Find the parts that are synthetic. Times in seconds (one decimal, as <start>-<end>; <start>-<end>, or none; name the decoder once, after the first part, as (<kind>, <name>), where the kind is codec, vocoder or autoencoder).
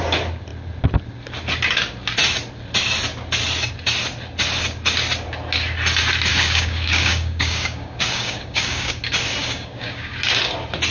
6.3-9.0 (codec, DAC); 9.4-10.2